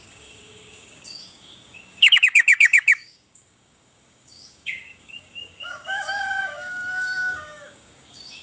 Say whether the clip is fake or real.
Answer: fake